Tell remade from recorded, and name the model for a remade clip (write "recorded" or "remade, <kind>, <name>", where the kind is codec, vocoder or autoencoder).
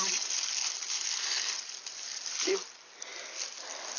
recorded